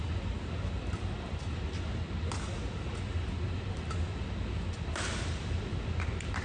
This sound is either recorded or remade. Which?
recorded